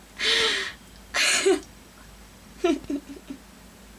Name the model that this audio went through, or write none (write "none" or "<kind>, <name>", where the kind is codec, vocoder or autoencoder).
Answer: none